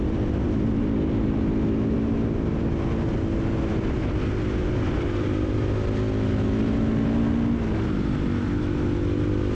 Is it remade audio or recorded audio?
recorded